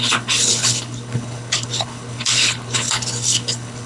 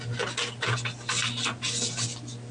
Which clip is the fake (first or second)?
first